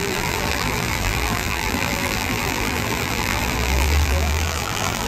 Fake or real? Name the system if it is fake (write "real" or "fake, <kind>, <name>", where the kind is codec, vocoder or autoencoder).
fake, vocoder, BigVGAN v2